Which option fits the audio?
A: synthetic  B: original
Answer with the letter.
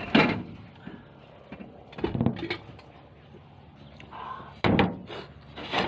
B